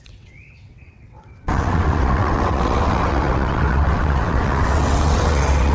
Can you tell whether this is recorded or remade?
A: remade